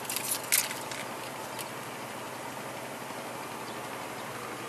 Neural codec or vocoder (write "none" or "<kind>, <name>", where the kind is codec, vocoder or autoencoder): none